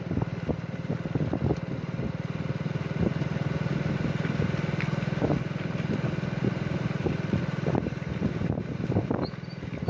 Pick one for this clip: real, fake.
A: real